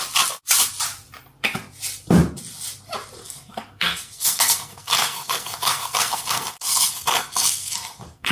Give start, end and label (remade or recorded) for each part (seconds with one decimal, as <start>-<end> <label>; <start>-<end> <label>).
0.0-3.2 recorded; 3.2-8.3 remade